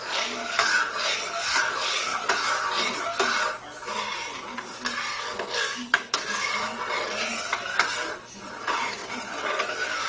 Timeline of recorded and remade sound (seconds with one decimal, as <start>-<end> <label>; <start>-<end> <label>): 0.0-0.7 remade; 0.7-1.3 recorded; 1.3-2.1 remade; 2.1-5.2 recorded; 5.2-6.7 remade; 6.7-9.5 recorded; 9.5-10.1 remade